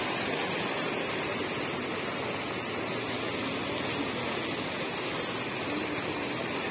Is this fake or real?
real